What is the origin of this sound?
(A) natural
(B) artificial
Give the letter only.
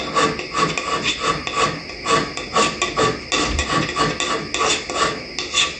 A